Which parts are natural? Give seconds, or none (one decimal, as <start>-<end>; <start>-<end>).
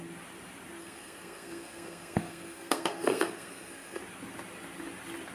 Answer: 0.0-0.8; 4.0-5.3